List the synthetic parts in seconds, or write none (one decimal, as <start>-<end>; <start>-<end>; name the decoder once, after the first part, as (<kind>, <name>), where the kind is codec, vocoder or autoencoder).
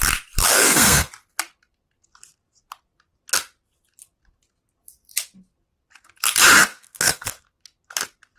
0.5-1.1 (codec, SNAC); 6.7-7.6